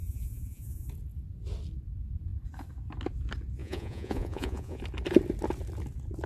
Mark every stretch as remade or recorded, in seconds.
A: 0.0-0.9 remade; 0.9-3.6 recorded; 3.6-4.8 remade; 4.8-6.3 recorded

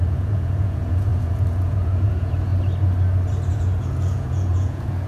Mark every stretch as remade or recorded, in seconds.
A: 0.0-2.5 remade; 2.5-3.5 recorded; 3.5-5.1 remade